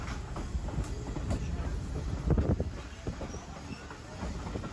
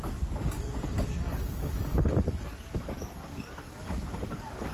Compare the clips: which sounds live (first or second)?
first